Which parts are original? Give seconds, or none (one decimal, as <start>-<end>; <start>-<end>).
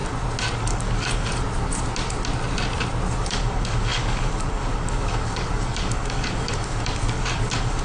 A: 0.0-0.6; 1.3-3.2